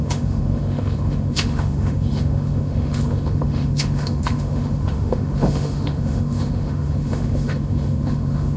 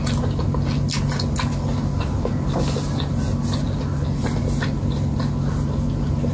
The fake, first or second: first